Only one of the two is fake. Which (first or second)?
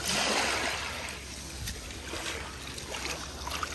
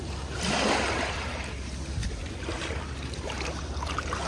second